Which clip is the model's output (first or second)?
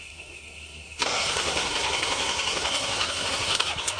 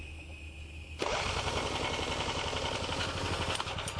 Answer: first